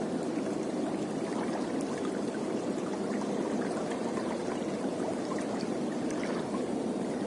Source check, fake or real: real